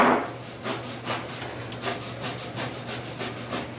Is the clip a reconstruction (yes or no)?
no